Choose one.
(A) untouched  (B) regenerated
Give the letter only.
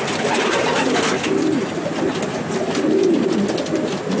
A